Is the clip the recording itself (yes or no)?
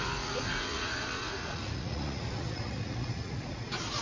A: no